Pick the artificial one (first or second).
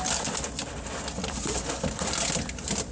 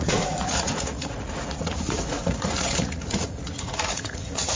second